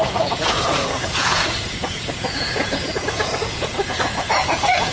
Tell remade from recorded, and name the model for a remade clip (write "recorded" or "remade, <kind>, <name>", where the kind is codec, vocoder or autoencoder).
remade, vocoder, Vocos